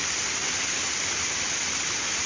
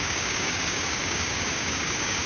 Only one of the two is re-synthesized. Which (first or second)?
second